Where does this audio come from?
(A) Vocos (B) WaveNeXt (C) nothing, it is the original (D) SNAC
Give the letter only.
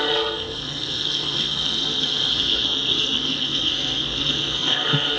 D